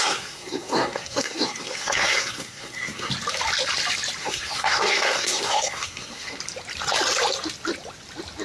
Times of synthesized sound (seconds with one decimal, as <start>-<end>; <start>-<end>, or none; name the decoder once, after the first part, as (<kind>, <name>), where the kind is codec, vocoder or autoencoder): 0.0-3.1 (codec, SNAC); 4.2-6.4